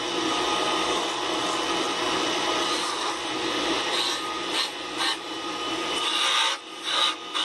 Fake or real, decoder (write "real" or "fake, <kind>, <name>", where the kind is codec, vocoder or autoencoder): real